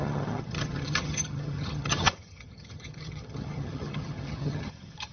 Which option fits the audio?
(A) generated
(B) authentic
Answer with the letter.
A